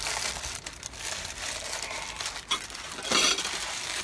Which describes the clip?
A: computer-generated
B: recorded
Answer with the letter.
B